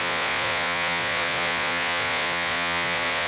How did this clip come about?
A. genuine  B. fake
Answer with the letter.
B